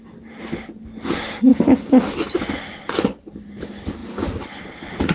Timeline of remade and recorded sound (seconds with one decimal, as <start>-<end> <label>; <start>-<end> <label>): 0.0-5.1 recorded